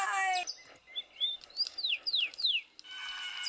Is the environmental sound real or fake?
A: real